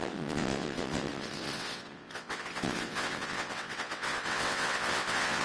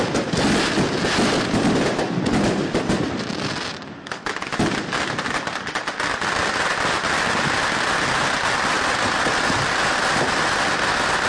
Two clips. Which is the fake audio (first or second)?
first